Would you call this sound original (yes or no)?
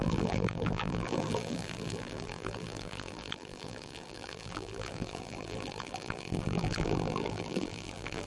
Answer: no